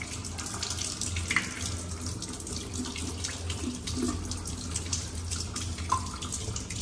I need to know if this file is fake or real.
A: real